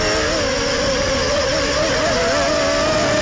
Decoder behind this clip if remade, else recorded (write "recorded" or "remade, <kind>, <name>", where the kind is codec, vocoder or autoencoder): recorded